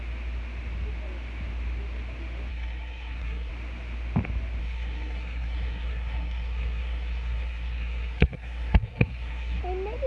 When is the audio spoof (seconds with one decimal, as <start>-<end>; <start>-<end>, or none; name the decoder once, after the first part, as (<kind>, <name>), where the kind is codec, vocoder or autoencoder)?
2.5-3.5 (codec, SNAC); 4.6-9.6